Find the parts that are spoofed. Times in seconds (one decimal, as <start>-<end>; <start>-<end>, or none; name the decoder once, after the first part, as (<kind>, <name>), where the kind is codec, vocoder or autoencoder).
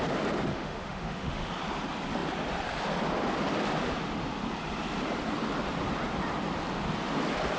0.5-1.5 (autoencoder, DAC-VAE)